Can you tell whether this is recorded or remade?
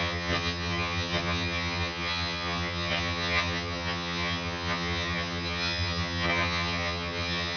remade